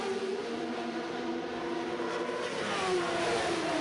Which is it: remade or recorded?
remade